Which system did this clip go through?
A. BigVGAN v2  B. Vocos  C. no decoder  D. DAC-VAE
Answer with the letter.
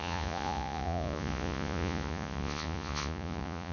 B